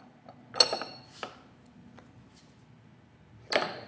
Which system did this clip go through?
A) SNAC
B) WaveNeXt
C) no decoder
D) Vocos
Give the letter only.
C